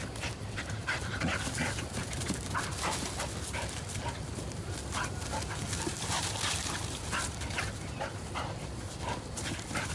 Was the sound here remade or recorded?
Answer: recorded